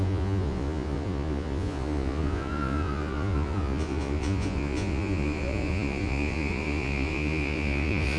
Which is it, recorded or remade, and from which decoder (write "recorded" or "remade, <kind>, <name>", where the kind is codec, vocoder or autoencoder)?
remade, vocoder, Vocos